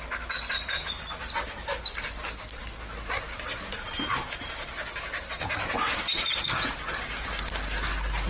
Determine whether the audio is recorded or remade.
recorded